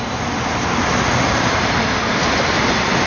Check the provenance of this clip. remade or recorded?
recorded